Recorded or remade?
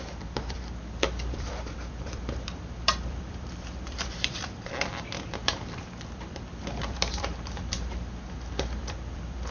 remade